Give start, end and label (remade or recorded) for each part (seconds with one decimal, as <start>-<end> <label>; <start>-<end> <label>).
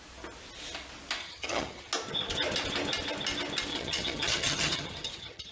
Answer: 0.0-1.2 recorded; 1.2-1.9 remade; 1.9-3.7 recorded; 3.7-5.5 remade